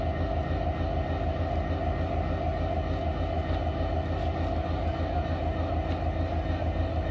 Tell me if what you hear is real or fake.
real